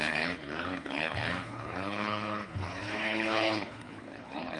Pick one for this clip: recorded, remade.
remade